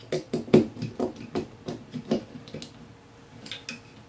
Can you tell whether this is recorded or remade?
recorded